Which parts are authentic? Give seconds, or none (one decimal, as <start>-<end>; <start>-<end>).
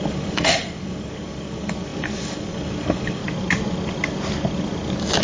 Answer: 3.2-5.2